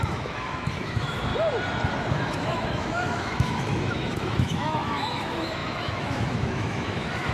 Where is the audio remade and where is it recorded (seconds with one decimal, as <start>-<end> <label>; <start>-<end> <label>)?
0.0-1.3 remade; 1.3-2.1 recorded; 2.1-7.3 remade